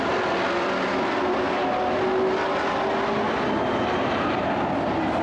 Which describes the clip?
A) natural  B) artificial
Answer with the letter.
A